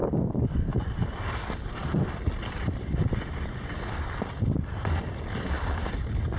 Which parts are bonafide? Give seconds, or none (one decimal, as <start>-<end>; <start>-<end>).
0.0-6.4